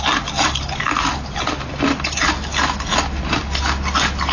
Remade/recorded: recorded